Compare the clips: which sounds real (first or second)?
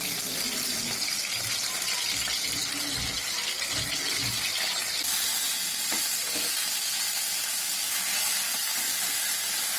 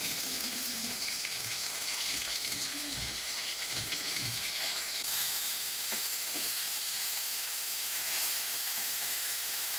first